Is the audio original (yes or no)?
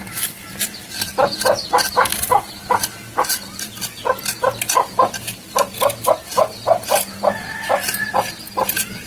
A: yes